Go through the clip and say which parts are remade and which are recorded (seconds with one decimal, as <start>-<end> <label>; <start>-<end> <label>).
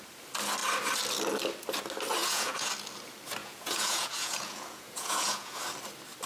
0.0-2.2 recorded; 2.2-2.7 remade; 2.7-3.4 recorded; 3.4-5.6 remade; 5.6-6.3 recorded